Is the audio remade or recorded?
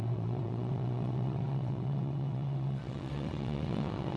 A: remade